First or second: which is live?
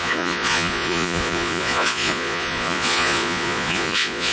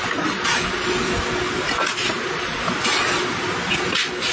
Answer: second